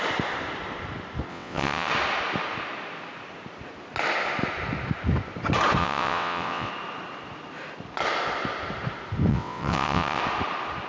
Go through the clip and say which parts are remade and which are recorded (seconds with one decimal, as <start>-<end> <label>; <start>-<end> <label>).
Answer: 0.0-1.3 recorded; 1.3-1.9 remade; 1.9-5.8 recorded; 5.8-6.7 remade; 6.7-9.3 recorded; 9.3-10.2 remade; 10.2-10.9 recorded